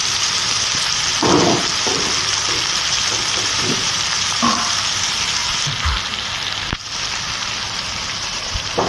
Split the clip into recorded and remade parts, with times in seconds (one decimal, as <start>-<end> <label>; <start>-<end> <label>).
0.0-1.1 remade; 1.1-3.3 recorded; 3.3-5.4 remade; 5.4-7.9 recorded; 7.9-8.9 remade

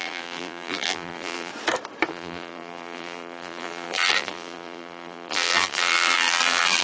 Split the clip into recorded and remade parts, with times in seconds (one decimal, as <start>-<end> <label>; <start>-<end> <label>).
0.0-1.5 remade; 1.5-2.1 recorded; 2.1-6.8 remade

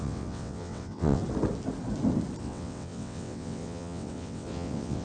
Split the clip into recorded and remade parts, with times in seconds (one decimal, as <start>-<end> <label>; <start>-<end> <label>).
0.0-1.2 remade; 1.2-2.4 recorded; 2.4-5.0 remade

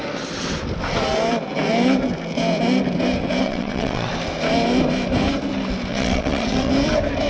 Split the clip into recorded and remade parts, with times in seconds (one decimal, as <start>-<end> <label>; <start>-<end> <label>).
0.0-3.4 recorded; 3.4-4.1 remade; 4.1-5.9 recorded; 5.9-6.7 remade; 6.7-7.3 recorded

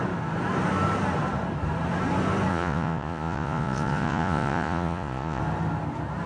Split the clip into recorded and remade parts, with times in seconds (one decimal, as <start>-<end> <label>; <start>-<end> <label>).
0.0-2.5 recorded; 2.5-5.4 remade; 5.4-6.3 recorded